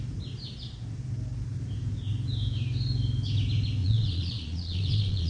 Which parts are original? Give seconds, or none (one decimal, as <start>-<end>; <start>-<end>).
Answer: 0.0-3.8